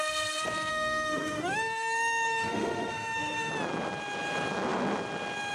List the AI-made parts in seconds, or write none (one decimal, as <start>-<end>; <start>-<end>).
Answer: 0.7-3.5